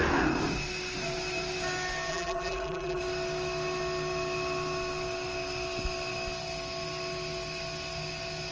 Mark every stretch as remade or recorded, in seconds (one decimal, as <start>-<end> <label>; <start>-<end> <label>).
0.0-2.1 recorded; 2.1-3.0 remade; 3.0-8.5 recorded